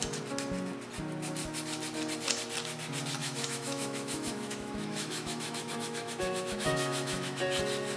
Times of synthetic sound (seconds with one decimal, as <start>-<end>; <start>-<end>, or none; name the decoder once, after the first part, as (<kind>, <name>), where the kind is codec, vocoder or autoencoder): 3.2-7.4 (autoencoder, DAC-VAE)